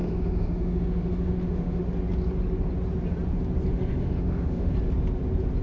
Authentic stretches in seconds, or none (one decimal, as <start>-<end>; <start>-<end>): 1.8-3.7; 4.7-5.6